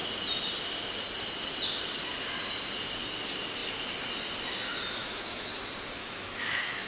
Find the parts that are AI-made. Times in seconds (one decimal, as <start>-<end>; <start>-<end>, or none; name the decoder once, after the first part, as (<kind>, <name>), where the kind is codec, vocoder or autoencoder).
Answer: 5.0-5.5 (autoencoder, DAC-VAE); 6.0-6.9